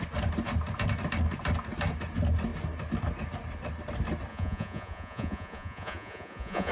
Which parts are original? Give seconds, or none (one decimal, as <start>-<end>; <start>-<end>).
0.0-4.3